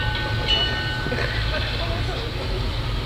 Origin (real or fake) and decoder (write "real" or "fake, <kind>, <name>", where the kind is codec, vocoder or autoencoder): real